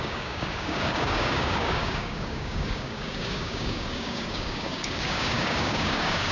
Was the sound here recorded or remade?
remade